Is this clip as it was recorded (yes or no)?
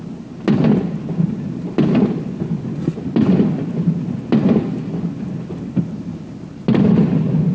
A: yes